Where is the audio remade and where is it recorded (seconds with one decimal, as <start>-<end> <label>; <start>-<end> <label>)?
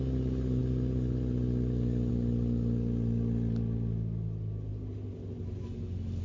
0.0-6.2 recorded